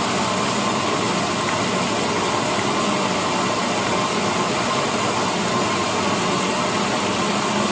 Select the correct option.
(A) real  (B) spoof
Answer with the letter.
A